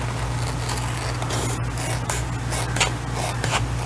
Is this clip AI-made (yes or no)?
no